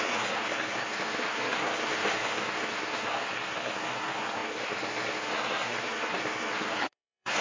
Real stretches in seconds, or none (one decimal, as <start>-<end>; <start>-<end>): none